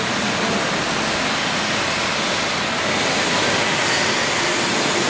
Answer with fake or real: fake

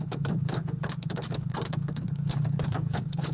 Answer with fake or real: fake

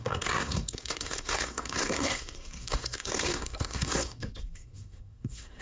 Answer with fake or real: fake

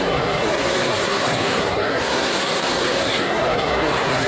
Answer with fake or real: fake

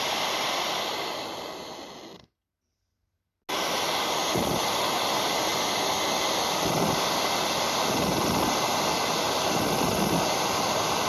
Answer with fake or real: real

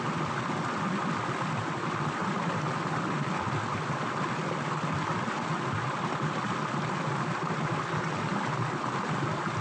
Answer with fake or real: real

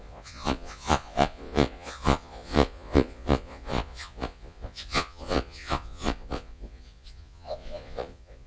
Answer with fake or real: fake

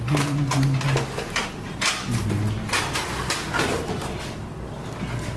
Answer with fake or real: real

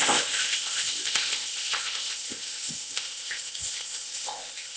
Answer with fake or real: fake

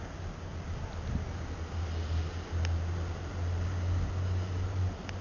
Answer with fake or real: real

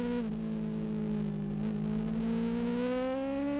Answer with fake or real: real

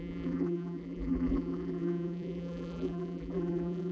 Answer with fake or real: fake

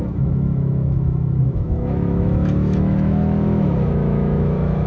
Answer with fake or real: fake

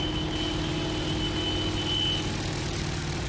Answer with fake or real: real